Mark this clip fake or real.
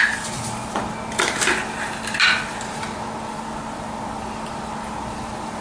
real